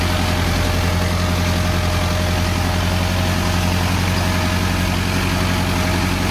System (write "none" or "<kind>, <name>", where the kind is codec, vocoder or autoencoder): none